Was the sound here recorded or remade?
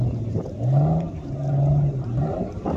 remade